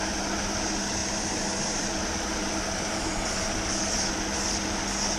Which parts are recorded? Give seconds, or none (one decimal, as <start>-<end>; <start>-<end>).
0.0-1.0; 4.1-5.2